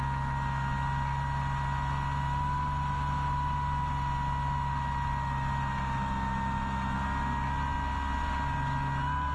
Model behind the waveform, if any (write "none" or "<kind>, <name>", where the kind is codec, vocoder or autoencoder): none